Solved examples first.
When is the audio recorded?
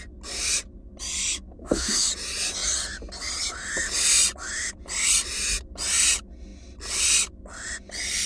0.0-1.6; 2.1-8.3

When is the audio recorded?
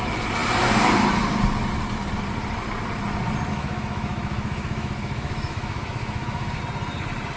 0.0-3.5; 6.6-7.4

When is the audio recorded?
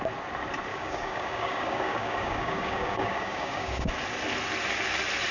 0.0-0.7; 3.9-5.3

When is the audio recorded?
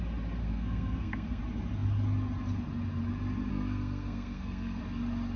0.0-0.4; 1.4-3.5; 4.8-5.4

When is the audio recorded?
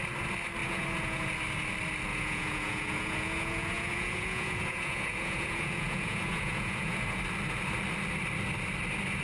0.0-0.6; 1.3-2.1; 7.2-9.2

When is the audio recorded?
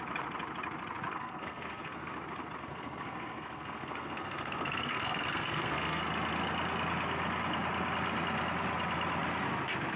0.0-1.1; 2.1-2.6; 6.0-10.0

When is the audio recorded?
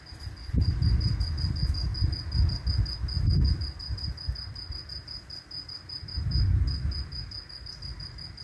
0.0-8.4